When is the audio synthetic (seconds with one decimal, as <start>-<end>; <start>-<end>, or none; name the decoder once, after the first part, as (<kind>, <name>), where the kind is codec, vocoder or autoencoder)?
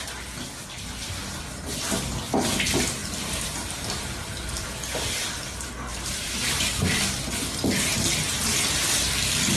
3.0-4.3 (vocoder, BigVGAN v2); 5.9-6.7